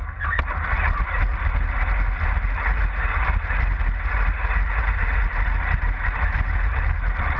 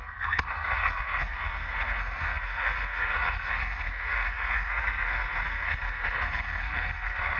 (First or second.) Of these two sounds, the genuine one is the first